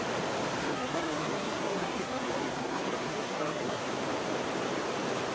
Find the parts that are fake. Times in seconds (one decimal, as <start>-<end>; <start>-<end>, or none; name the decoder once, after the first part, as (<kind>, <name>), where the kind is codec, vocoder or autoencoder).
0.6-3.8 (codec, SNAC)